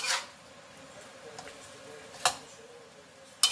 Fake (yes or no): no